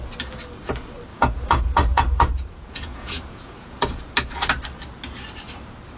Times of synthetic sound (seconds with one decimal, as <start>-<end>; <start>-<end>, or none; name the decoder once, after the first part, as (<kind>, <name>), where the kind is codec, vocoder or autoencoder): 1.1-4.0 (vocoder, Vocos)